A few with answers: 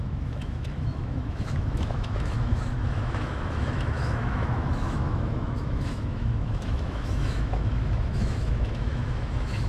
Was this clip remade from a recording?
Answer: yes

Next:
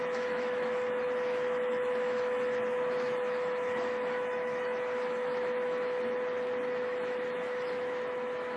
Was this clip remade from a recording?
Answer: yes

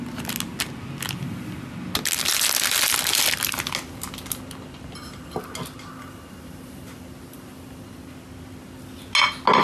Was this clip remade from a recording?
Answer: no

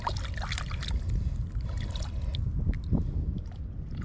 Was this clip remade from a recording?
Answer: no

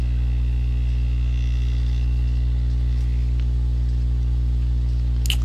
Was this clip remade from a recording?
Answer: no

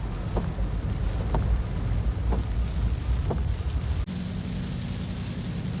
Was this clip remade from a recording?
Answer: no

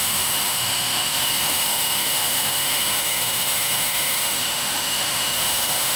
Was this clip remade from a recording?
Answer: yes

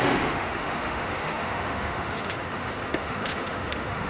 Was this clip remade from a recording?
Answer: yes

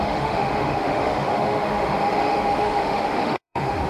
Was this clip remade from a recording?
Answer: yes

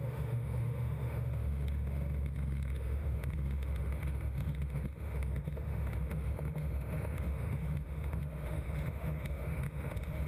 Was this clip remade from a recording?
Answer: yes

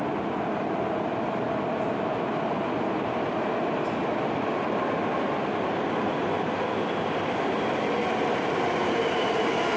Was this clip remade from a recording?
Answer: no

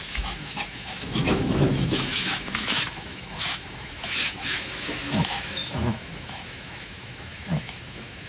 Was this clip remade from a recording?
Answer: yes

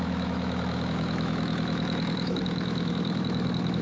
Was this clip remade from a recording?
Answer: yes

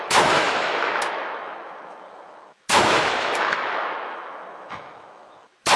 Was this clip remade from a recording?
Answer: yes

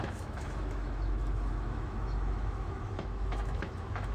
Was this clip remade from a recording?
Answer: yes